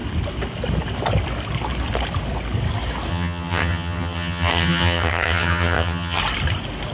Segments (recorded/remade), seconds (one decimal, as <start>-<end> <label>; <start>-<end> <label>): 0.0-3.1 recorded; 3.1-6.2 remade; 6.2-6.9 recorded